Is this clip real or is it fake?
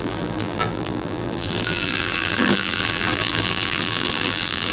fake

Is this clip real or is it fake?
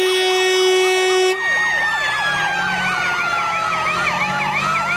real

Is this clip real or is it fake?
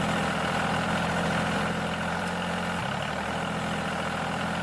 fake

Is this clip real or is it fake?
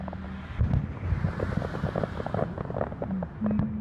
real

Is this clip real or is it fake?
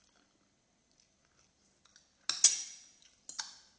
real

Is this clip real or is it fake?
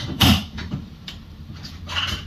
fake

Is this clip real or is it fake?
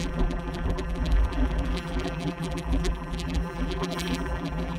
fake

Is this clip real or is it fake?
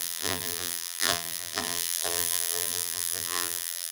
fake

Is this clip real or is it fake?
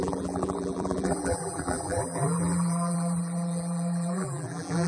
fake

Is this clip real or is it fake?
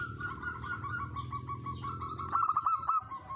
real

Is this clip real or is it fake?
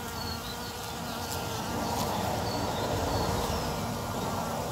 real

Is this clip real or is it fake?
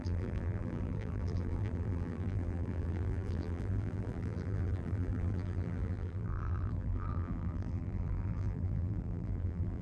fake